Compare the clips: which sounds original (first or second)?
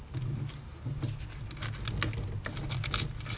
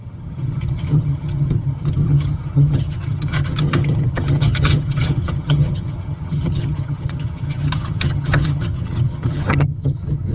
first